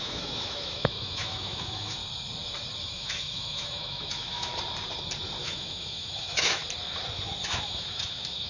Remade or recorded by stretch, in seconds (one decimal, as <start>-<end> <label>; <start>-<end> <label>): 0.0-2.0 remade; 2.0-2.8 recorded; 2.8-4.5 remade; 4.5-5.4 recorded; 5.4-6.6 remade; 6.6-7.4 recorded; 7.4-8.5 remade